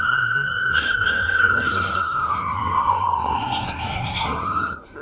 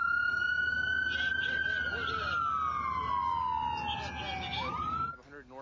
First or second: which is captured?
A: second